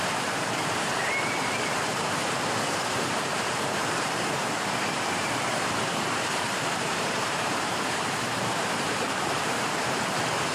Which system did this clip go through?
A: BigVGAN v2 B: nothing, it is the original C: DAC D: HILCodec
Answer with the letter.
A